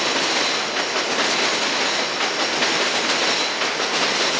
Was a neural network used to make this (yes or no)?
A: no